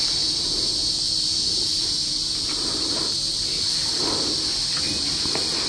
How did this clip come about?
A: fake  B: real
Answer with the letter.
B